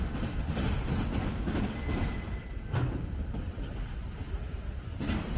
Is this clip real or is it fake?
real